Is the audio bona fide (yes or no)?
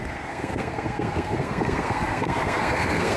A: no